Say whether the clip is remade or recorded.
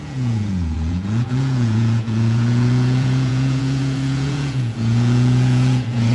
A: remade